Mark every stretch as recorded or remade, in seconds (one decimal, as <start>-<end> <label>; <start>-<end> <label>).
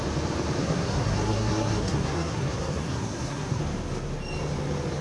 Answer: 0.0-0.6 recorded; 0.6-3.6 remade; 3.6-5.0 recorded